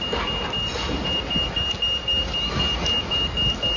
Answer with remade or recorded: recorded